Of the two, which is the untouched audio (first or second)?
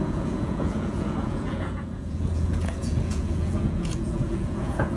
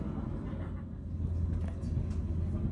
second